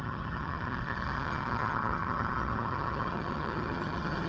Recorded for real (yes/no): no